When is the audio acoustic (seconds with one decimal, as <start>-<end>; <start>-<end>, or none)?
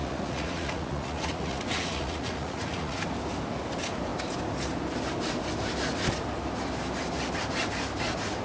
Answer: 3.0-8.4